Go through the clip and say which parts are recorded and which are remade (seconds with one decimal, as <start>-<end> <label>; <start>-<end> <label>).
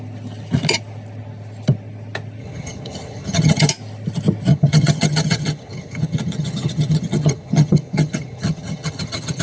0.0-2.4 recorded; 2.4-3.7 remade; 3.7-4.5 recorded; 4.5-9.4 remade